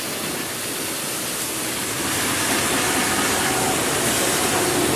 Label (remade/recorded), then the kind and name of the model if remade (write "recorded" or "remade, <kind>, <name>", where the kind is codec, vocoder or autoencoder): recorded